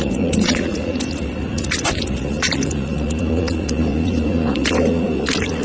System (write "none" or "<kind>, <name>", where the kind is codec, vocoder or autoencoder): vocoder, Vocos